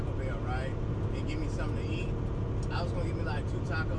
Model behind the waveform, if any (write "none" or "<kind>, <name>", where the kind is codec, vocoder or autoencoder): none